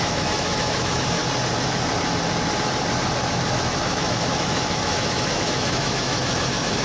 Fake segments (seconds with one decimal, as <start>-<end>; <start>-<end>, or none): 0.0-1.2; 3.3-6.8